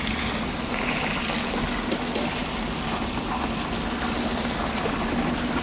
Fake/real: real